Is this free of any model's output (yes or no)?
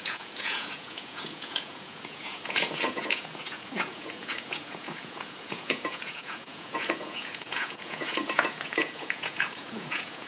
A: no